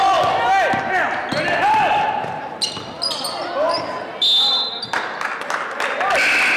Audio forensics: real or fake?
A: real